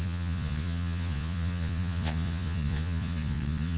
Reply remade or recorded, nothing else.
remade